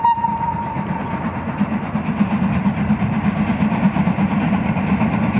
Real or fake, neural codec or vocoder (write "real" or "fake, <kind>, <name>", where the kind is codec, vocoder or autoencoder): real